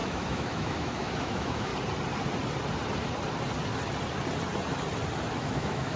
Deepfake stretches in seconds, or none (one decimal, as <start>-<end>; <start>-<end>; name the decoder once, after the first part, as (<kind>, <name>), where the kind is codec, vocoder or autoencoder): 0.0-1.7 (autoencoder, DAC-VAE); 5.3-6.0